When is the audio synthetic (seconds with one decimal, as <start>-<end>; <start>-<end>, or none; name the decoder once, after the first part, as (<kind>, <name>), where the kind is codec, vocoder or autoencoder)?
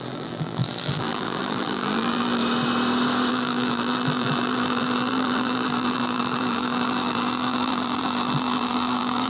0.0-2.4 (vocoder, BigVGAN v2); 3.3-9.3